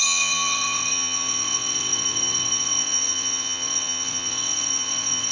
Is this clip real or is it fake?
fake